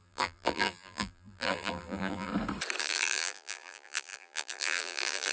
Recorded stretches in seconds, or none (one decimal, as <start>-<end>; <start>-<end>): 2.3-2.8